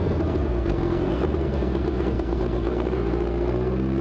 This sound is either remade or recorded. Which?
remade